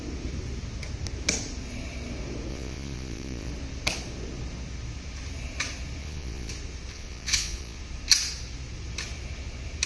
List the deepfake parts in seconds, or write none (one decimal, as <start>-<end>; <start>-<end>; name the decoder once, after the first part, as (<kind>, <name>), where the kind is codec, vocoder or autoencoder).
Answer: 2.5-3.5 (vocoder, Vocos); 6.0-6.5; 6.9-7.8